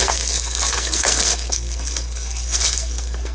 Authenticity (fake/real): fake